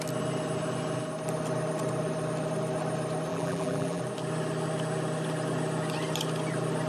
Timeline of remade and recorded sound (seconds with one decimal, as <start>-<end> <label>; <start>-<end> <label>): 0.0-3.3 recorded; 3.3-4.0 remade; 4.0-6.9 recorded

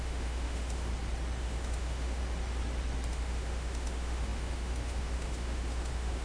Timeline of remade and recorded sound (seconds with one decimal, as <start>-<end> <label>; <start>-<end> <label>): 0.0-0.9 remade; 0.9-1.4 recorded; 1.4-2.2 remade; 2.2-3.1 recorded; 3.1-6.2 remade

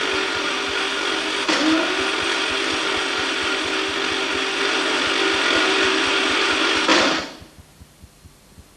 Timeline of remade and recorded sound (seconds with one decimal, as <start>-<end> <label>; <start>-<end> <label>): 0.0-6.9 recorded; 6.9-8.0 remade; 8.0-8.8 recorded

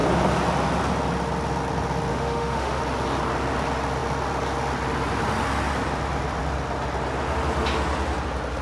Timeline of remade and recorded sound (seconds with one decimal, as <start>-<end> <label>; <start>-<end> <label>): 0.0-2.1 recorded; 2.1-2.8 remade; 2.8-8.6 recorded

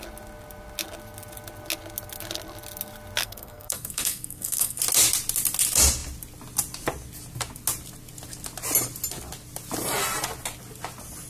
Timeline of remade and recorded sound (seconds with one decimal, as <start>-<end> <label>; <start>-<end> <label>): 0.0-3.2 recorded; 3.2-4.8 remade; 4.8-11.3 recorded

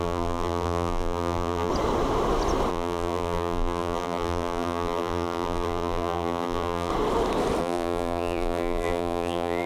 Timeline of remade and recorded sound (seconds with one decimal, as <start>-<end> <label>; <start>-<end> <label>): 0.0-1.7 remade; 1.7-2.7 recorded; 2.7-6.9 remade; 6.9-7.6 recorded; 7.6-9.7 remade

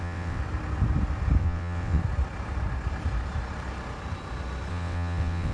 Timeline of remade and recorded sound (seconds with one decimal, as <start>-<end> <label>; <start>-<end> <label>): 0.0-0.4 remade; 0.4-1.4 recorded; 1.4-2.0 remade; 2.0-4.7 recorded; 4.7-5.5 remade